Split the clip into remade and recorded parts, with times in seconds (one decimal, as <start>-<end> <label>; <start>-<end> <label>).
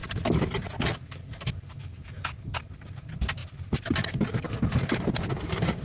0.0-5.8 recorded